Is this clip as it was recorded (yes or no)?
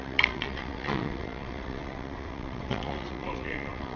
no